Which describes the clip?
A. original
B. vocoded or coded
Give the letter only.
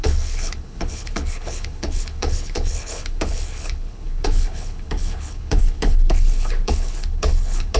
B